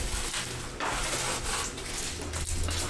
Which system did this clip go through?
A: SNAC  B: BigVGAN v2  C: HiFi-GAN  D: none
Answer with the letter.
D